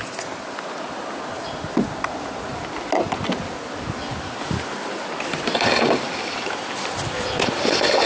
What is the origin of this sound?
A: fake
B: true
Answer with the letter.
B